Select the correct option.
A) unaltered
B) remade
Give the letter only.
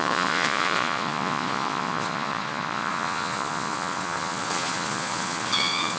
B